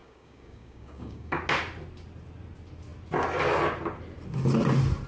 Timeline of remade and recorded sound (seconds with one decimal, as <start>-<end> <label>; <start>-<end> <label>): 0.0-1.4 remade; 1.4-5.1 recorded